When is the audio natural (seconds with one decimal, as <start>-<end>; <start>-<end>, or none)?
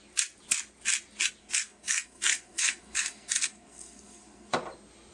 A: 0.0-1.4; 4.5-5.1